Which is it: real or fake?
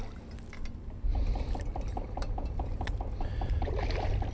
real